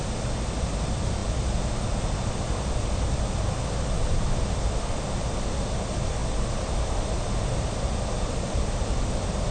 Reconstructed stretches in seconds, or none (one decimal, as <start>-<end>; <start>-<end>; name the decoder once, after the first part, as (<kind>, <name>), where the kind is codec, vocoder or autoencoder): none